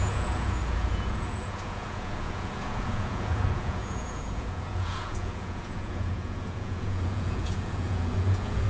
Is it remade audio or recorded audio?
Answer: remade